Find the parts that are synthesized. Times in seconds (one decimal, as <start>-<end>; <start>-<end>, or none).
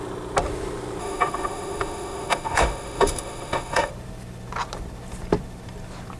1.0-3.9